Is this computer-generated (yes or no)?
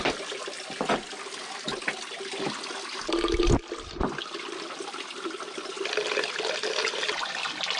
no